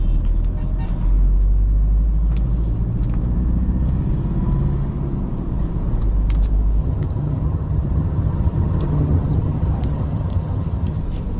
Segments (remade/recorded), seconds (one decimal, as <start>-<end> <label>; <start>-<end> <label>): 0.0-6.8 recorded; 6.8-11.0 remade; 11.0-11.4 recorded